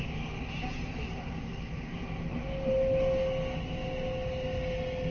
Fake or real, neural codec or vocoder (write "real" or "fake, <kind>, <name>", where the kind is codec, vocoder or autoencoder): real